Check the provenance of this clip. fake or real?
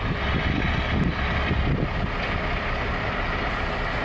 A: real